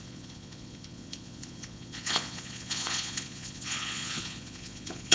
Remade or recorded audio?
remade